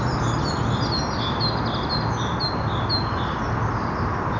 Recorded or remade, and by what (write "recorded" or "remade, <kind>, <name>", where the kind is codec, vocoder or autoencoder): recorded